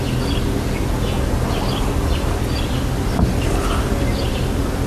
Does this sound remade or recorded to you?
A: recorded